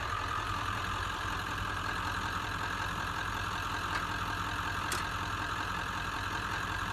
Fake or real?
fake